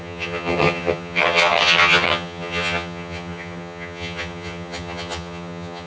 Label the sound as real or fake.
fake